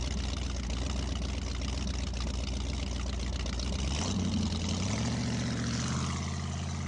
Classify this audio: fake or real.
real